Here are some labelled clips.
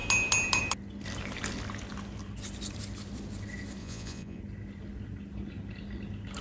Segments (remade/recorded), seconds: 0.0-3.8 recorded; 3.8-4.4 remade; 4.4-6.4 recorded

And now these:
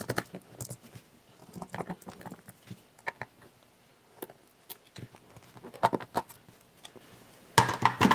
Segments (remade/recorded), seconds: 0.0-8.1 recorded

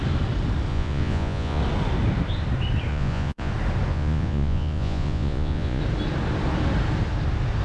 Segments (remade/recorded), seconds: 0.0-0.7 recorded; 0.7-1.6 remade; 1.6-2.9 recorded; 2.9-3.5 remade; 3.5-3.9 recorded; 3.9-5.8 remade; 5.8-7.6 recorded

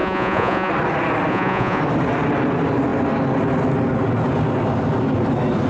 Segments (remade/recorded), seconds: 0.0-0.7 remade; 0.7-1.3 recorded; 1.3-1.8 remade; 1.8-5.7 recorded

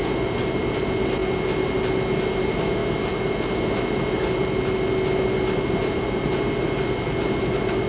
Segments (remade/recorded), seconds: 0.0-7.9 recorded

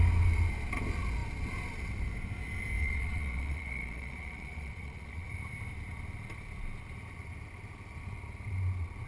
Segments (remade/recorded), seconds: 0.0-2.8 recorded; 2.8-5.3 remade; 5.3-9.1 recorded

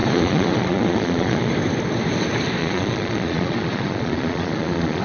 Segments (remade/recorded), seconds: 0.0-1.5 remade; 1.5-2.6 recorded; 2.6-5.0 remade

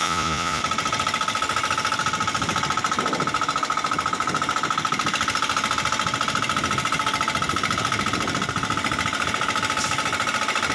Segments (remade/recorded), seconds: 0.0-0.6 remade; 0.6-10.7 recorded